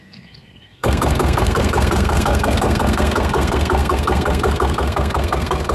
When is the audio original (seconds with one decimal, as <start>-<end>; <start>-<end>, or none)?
none